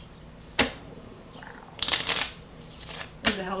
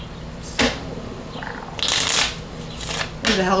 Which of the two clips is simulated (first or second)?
first